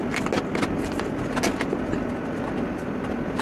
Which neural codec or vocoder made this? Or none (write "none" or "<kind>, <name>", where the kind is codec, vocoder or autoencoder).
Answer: none